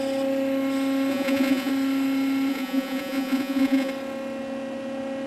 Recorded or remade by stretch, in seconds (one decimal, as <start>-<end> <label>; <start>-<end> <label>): 0.0-1.1 recorded; 1.1-1.7 remade; 1.7-2.5 recorded; 2.5-3.9 remade; 3.9-5.3 recorded